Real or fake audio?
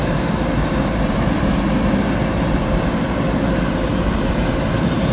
fake